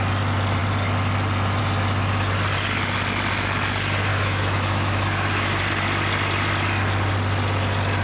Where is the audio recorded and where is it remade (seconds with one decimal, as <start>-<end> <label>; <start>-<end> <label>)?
0.0-4.1 recorded; 4.1-5.6 remade; 5.6-8.0 recorded